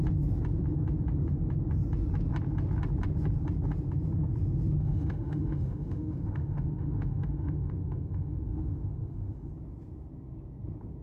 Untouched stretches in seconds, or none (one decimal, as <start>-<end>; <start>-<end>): 0.0-4.8; 9.5-11.0